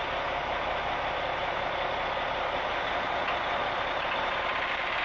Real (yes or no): yes